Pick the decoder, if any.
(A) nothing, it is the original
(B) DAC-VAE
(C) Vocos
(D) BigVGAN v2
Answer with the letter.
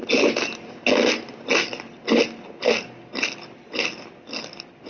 A